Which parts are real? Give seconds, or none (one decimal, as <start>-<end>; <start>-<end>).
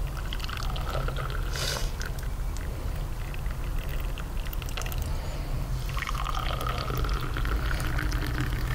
0.0-8.7